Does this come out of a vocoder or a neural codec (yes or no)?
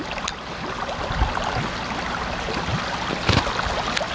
no